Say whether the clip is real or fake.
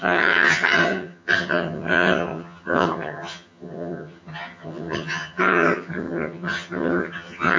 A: fake